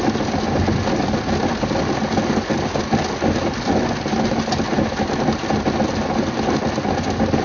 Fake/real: real